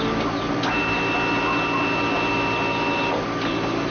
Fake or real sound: real